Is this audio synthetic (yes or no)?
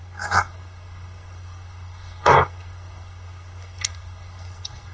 yes